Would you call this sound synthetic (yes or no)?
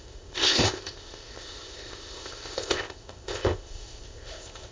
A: yes